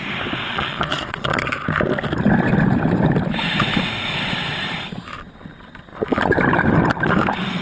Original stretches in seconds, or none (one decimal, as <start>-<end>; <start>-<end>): 0.0-0.5; 1.5-7.6